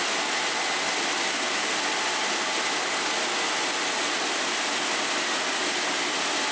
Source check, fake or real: real